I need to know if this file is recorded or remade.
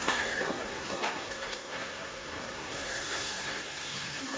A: remade